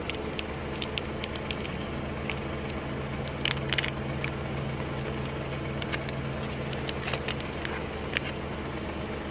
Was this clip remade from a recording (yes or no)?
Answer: no